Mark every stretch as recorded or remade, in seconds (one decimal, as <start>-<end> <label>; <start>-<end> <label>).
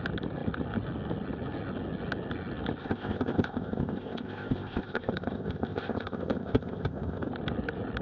0.0-2.8 recorded; 2.8-7.3 remade; 7.3-8.0 recorded